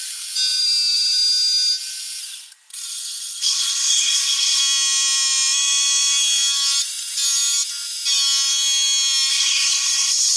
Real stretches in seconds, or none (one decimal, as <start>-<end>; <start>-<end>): 0.0-2.7; 4.6-9.3